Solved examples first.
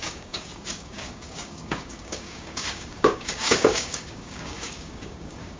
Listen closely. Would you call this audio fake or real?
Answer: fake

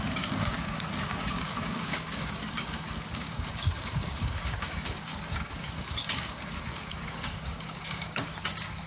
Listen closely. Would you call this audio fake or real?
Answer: fake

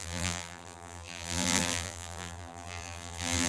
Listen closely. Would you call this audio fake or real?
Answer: fake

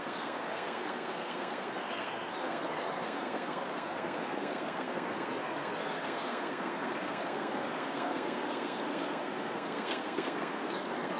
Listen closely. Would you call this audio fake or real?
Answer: fake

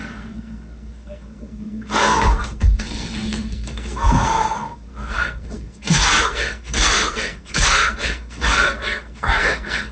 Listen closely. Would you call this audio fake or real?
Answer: fake